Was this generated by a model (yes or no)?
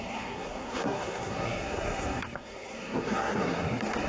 yes